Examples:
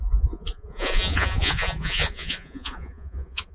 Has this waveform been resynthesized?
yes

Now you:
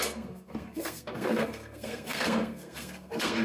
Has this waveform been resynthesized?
yes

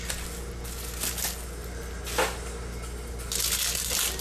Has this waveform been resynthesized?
no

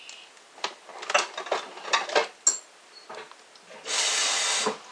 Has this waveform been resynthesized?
no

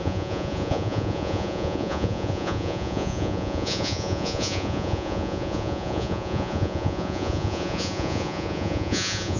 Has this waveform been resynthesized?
yes